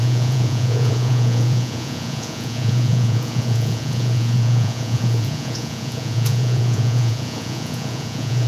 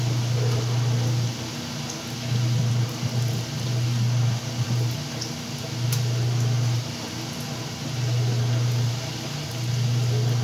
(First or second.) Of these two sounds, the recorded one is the second